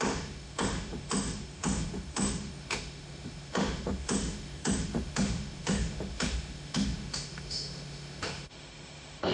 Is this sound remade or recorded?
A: remade